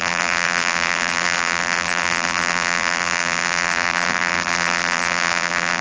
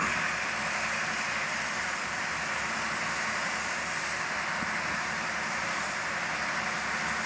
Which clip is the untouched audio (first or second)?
second